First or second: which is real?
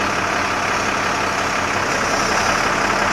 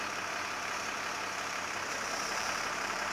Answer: first